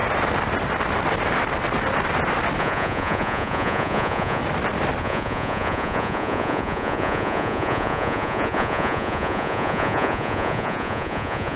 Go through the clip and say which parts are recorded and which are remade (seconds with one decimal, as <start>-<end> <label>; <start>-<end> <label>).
0.0-2.6 recorded; 2.6-4.4 remade; 4.4-5.0 recorded; 5.0-11.6 remade